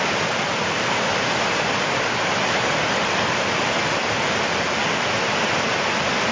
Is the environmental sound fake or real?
real